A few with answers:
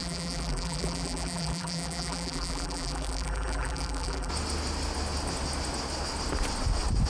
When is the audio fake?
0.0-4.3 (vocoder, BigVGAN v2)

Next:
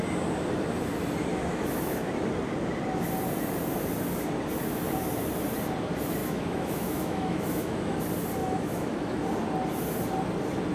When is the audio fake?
1.3-2.1 (autoencoder, DAC-VAE); 6.2-8.0; 8.4-9.2

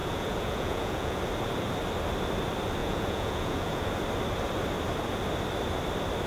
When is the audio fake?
0.0-1.2 (vocoder, Vocos); 2.8-3.9

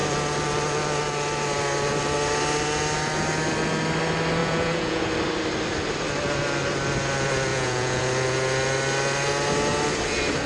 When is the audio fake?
4.4-5.0 (vocoder, Vocos); 7.5-8.0

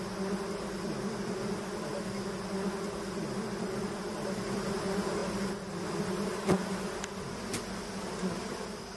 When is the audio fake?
none

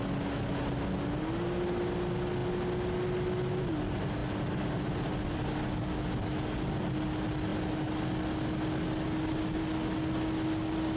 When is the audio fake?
none

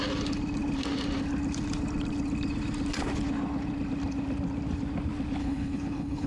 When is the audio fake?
5.4-6.3 (codec, HILCodec)

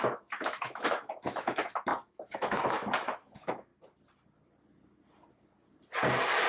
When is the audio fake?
0.0-3.7 (autoencoder, DAC-VAE)